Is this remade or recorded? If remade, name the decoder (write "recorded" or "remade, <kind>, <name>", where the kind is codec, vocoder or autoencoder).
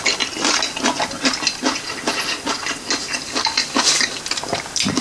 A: recorded